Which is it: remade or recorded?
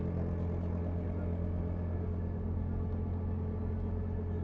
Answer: recorded